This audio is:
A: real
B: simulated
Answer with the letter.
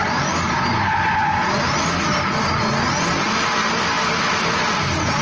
A